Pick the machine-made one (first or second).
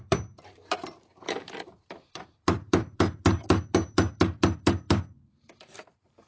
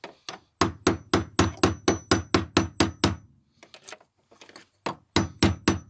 first